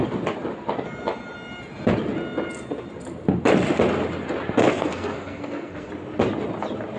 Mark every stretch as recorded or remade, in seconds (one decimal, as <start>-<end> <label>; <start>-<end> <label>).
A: 0.0-4.6 recorded; 4.6-5.9 remade; 5.9-7.0 recorded